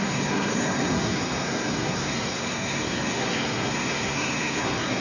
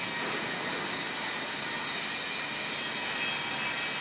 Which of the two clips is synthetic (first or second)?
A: first